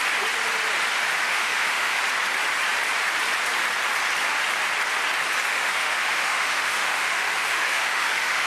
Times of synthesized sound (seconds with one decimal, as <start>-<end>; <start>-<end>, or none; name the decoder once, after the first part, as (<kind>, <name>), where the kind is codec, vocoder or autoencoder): 1.2-2.0 (autoencoder, DAC-VAE); 5.5-8.5